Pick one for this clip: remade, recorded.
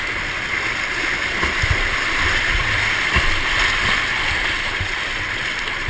recorded